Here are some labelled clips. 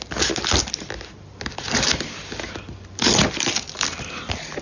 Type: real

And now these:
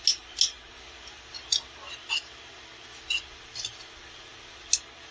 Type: real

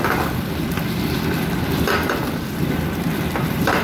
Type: fake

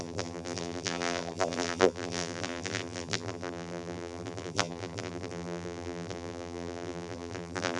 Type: fake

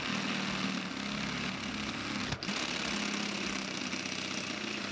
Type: real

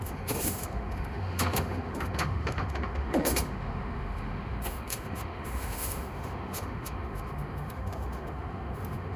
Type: fake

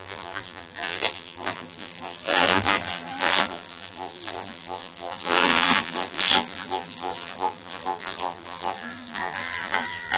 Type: fake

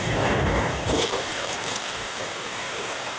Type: fake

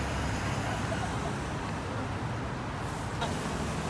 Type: real